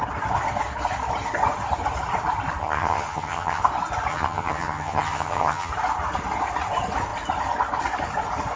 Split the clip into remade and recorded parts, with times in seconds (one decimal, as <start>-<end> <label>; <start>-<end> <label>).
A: 0.0-2.6 recorded; 2.6-3.6 remade; 3.6-4.1 recorded; 4.1-5.7 remade; 5.7-8.6 recorded